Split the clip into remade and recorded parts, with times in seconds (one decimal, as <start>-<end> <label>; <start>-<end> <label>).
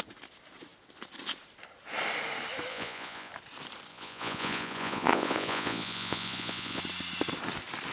0.0-2.7 recorded; 2.7-3.3 remade; 3.3-3.9 recorded; 3.9-6.8 remade; 6.8-7.9 recorded